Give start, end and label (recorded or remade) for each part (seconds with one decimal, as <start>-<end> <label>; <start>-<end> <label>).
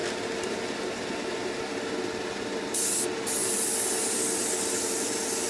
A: 0.0-5.5 recorded